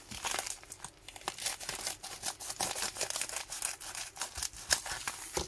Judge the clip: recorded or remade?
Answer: recorded